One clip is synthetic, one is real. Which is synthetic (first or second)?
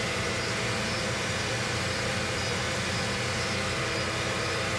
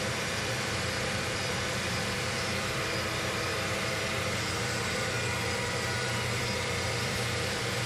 second